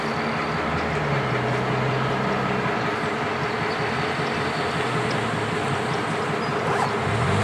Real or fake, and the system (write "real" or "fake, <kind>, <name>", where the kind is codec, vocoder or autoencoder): real